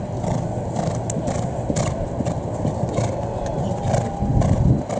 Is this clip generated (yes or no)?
no